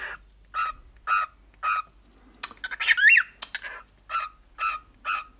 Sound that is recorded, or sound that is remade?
recorded